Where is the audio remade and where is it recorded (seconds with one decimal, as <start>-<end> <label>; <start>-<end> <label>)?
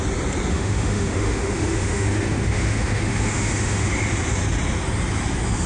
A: 0.0-0.5 recorded; 0.5-3.9 remade; 3.9-5.7 recorded